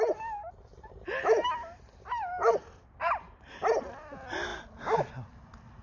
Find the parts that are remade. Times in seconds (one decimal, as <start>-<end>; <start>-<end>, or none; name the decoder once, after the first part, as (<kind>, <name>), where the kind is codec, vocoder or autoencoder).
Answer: none